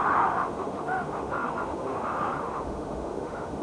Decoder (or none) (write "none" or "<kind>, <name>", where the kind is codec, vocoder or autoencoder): autoencoder, DAC-VAE